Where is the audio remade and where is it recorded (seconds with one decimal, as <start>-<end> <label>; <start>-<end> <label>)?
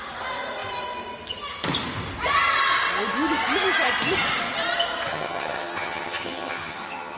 0.0-5.1 recorded; 5.1-7.2 remade